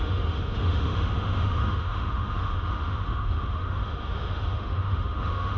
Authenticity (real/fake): fake